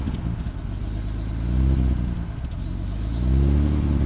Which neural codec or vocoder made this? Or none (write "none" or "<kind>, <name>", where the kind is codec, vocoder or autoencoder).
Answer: none